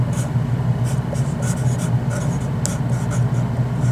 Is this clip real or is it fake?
real